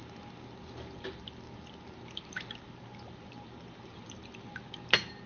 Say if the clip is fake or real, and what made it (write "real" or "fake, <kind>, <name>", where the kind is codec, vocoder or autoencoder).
real